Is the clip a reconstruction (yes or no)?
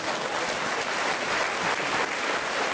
no